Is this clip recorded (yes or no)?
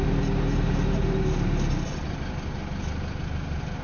yes